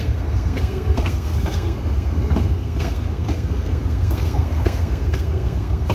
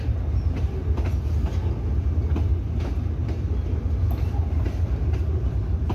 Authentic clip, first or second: second